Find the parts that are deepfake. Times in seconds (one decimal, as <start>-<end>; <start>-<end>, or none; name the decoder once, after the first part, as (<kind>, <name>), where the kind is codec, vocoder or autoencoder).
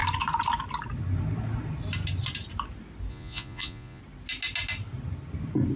3.1-4.0 (vocoder, Vocos)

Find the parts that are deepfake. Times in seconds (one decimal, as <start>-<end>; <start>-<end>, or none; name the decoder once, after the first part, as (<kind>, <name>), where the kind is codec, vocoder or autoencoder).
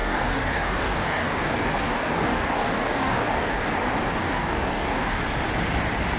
0.0-3.7 (codec, DAC); 4.2-5.2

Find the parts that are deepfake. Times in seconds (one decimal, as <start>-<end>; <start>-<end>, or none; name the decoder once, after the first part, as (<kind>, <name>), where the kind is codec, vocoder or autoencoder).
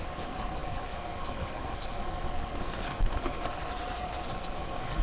0.0-5.0 (codec, SNAC)